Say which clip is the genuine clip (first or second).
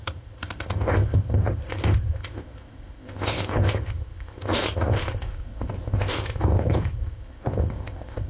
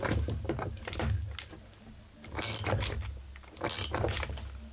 second